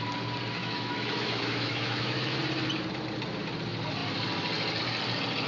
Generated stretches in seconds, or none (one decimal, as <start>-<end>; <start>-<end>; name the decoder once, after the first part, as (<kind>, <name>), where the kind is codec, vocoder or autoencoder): 0.6-2.4 (autoencoder, DAC-VAE)